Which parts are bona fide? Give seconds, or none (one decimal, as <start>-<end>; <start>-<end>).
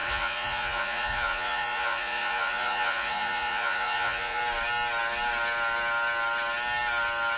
4.4-7.4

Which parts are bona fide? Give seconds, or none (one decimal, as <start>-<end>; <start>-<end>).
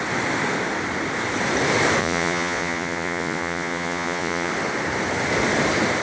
0.0-2.0; 4.5-6.0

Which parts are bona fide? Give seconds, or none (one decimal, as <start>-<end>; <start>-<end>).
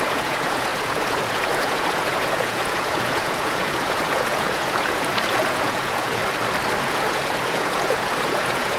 6.2-6.8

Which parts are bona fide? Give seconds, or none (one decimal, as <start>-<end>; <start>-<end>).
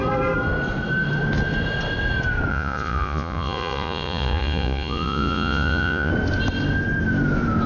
0.0-2.5; 6.1-7.7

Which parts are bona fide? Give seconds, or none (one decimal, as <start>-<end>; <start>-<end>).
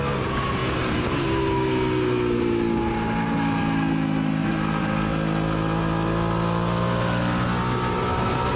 0.0-8.6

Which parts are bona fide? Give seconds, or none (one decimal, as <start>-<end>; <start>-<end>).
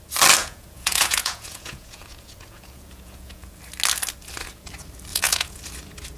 0.0-0.4; 3.5-5.1; 5.6-6.2